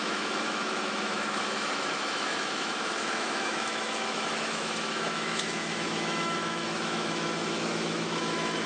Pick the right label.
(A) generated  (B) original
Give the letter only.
A